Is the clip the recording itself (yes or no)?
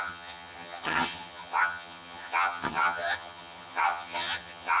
no